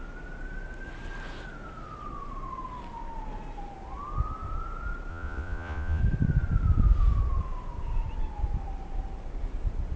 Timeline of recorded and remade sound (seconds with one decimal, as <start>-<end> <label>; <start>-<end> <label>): 0.0-5.1 recorded; 5.1-6.0 remade; 6.0-10.0 recorded